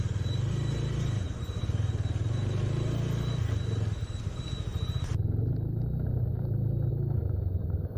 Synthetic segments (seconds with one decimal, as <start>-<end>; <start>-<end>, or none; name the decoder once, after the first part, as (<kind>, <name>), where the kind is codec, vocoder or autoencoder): 6.9-8.0 (autoencoder, DAC-VAE)